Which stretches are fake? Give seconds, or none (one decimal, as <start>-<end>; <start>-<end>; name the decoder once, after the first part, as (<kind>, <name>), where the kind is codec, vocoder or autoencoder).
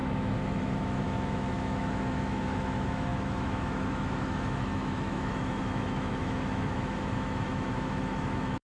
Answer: 0.0-8.7 (autoencoder, DAC-VAE)